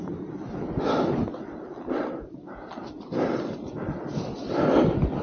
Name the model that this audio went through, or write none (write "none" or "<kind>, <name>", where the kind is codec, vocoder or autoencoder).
none